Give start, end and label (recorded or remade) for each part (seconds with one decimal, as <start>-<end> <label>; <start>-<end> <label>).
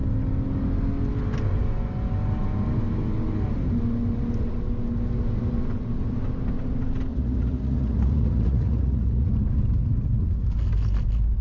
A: 0.0-7.1 recorded; 7.1-9.3 remade; 9.3-11.4 recorded